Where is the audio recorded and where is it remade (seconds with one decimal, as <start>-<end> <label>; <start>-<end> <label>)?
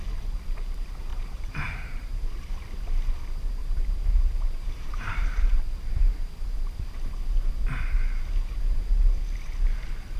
0.0-1.1 recorded; 1.1-2.5 remade; 2.5-3.6 recorded; 3.6-6.9 remade; 6.9-10.2 recorded